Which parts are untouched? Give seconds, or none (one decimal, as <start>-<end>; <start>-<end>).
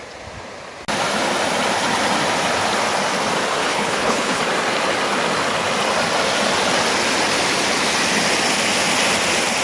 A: 0.0-3.6; 4.4-9.6